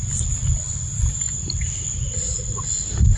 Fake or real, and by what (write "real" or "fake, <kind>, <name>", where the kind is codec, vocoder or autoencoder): real